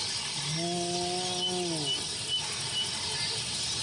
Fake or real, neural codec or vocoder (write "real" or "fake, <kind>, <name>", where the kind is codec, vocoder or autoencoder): real